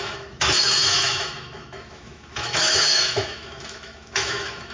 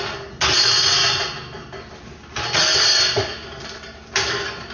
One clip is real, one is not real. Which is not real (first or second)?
first